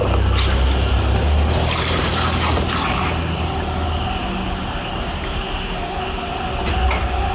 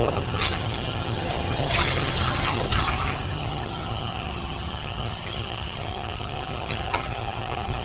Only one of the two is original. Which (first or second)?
first